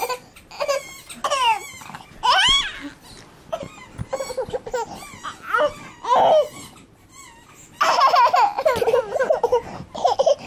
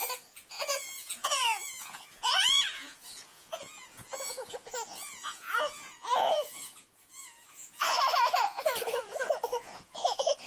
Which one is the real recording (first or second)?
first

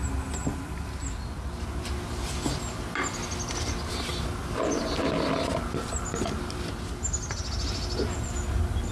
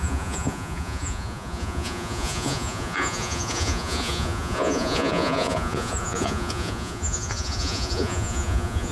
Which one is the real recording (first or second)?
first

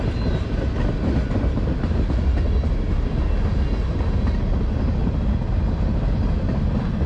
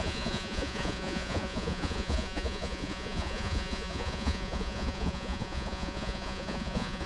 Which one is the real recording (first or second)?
first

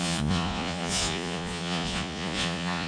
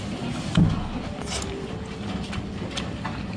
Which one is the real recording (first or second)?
second